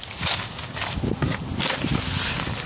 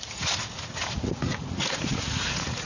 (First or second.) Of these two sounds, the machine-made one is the second